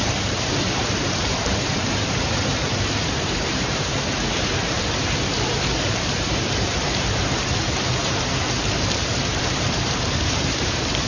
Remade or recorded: remade